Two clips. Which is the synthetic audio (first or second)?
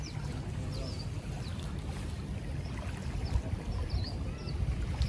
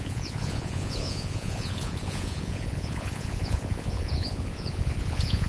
second